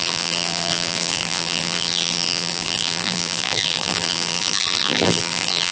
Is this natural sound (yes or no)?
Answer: no